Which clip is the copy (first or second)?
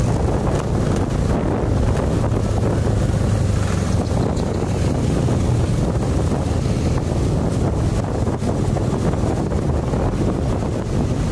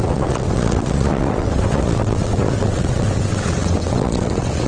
second